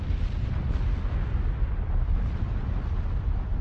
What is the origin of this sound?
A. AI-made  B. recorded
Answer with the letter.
B